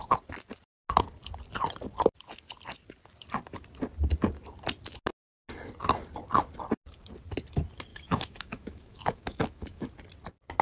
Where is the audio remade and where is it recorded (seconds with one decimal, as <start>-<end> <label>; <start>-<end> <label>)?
0.0-7.9 recorded; 7.9-9.9 remade; 9.9-10.6 recorded